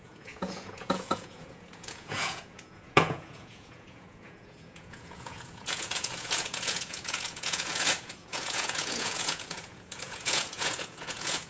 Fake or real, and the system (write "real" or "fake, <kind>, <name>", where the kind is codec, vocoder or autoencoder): fake, vocoder, Vocos